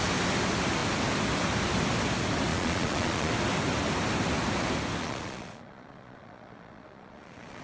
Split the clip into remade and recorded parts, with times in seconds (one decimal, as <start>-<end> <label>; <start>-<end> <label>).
0.0-2.5 recorded; 2.5-3.3 remade; 3.3-5.0 recorded; 5.0-7.6 remade